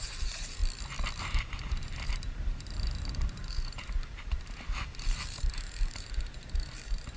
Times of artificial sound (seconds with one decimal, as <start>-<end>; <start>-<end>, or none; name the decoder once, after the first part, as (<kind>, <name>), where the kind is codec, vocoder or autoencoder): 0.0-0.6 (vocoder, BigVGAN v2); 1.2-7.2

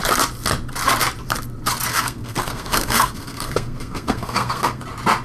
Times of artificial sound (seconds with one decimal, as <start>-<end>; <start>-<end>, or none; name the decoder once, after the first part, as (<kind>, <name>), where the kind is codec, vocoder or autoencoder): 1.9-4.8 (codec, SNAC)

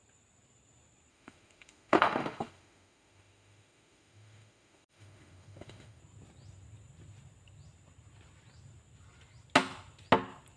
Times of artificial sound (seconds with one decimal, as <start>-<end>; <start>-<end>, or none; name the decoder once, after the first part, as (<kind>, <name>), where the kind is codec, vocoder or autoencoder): 1.1-6.0 (autoencoder, DAC-VAE)

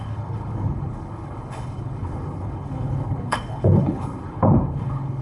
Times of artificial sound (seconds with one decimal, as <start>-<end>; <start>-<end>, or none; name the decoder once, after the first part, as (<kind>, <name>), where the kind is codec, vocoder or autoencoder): 0.0-5.2 (codec, HILCodec)